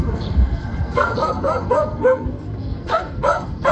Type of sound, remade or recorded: remade